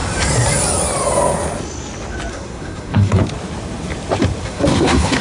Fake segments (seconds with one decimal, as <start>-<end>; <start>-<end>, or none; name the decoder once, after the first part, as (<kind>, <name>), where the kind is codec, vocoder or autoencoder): 2.3-3.2 (codec, SNAC); 4.4-5.2